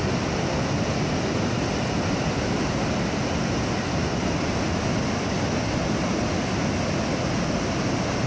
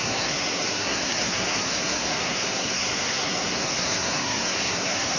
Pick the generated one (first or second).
second